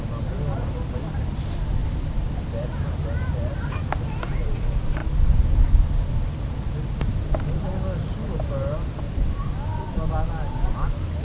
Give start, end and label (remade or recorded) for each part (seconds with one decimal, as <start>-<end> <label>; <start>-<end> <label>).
0.0-1.8 recorded; 1.8-3.5 remade; 3.5-11.2 recorded